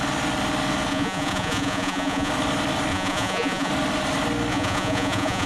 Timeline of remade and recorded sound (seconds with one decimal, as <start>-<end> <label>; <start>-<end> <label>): 0.0-0.9 recorded; 0.9-2.3 remade; 2.3-2.9 recorded; 2.9-3.7 remade; 3.7-4.5 recorded; 4.5-5.5 remade